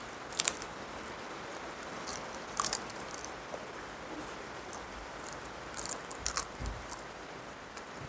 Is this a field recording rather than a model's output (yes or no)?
no